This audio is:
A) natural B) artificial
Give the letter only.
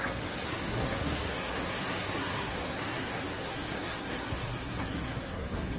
B